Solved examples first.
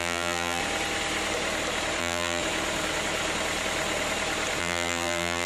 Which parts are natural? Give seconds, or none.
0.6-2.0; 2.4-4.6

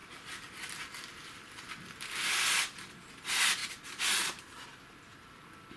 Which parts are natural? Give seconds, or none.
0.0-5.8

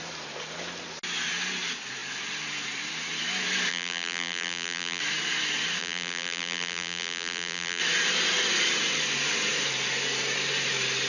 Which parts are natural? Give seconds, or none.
0.0-3.7; 5.0-5.8; 7.8-11.1

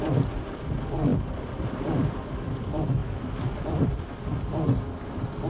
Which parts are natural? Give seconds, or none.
0.0-1.1; 2.0-3.0; 4.0-5.5